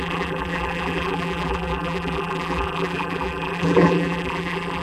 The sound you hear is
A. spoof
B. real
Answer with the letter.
A